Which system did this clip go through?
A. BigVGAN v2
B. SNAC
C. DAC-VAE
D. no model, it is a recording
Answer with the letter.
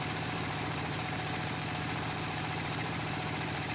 A